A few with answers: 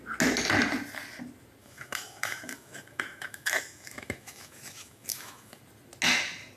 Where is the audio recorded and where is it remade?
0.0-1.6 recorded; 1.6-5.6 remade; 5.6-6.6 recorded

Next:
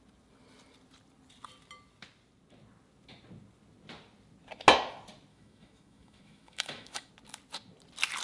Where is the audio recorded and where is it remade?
0.0-5.3 recorded; 5.3-7.1 remade; 7.1-8.2 recorded

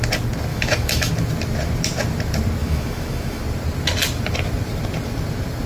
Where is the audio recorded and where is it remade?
0.0-0.5 recorded; 0.5-1.1 remade; 1.1-2.6 recorded; 2.6-3.4 remade; 3.4-5.7 recorded

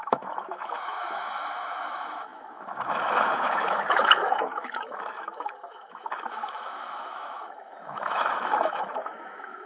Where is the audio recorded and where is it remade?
0.0-9.7 remade

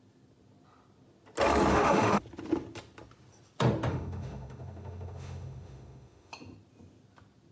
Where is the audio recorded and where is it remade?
0.0-1.7 recorded; 1.7-2.2 remade; 2.2-3.9 recorded; 3.9-6.3 remade; 6.3-7.5 recorded

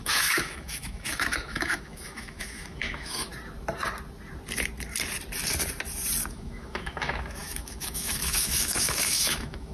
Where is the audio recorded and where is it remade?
0.0-3.3 remade; 3.3-6.3 recorded; 6.3-9.7 remade

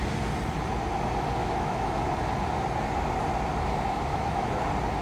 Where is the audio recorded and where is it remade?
0.0-1.4 recorded; 1.4-2.1 remade; 2.1-4.1 recorded; 4.1-4.6 remade; 4.6-5.0 recorded

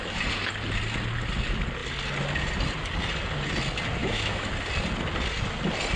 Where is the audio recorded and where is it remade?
0.0-4.0 recorded; 4.0-4.5 remade; 4.5-6.0 recorded